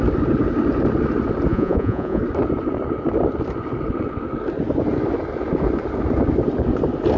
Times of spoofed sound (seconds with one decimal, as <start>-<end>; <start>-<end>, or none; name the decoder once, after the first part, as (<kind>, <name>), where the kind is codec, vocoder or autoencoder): 1.5-2.2 (vocoder, Vocos)